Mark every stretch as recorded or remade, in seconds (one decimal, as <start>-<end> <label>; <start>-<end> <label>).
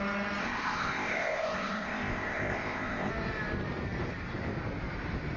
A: 0.0-0.4 recorded; 0.4-3.1 remade; 3.1-5.4 recorded